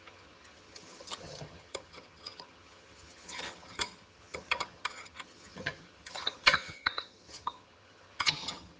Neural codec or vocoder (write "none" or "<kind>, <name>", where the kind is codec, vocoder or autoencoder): vocoder, HiFi-GAN